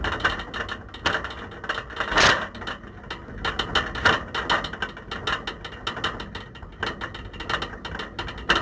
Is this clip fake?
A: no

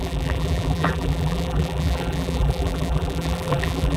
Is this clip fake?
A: yes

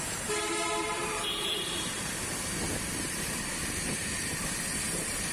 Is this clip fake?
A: yes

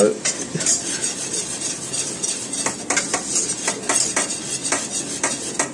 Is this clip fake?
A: no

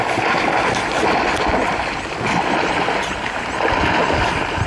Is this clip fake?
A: no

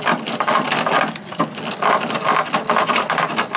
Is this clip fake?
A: no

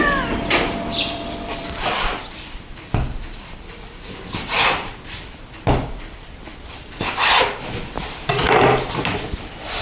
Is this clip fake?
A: yes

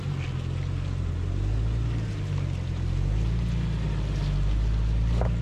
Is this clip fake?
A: no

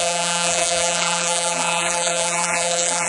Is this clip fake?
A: yes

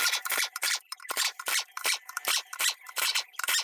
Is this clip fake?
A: yes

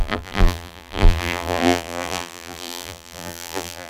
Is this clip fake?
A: yes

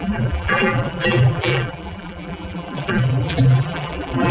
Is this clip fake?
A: yes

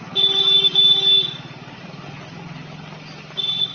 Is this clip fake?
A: no